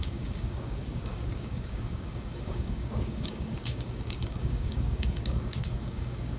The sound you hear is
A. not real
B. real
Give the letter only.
A